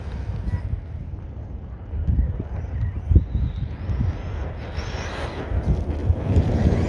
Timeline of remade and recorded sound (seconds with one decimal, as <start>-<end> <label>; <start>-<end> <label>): 0.0-6.0 recorded; 6.0-6.9 remade